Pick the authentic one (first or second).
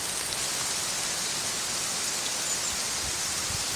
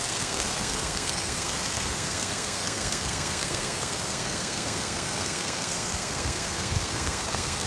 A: first